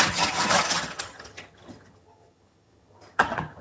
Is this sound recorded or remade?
remade